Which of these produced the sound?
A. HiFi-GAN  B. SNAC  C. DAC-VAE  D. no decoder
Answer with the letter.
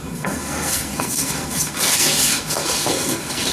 B